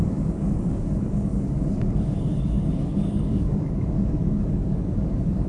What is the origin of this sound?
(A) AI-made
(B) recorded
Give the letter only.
A